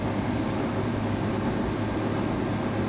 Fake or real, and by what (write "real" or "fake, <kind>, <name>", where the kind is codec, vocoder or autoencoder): real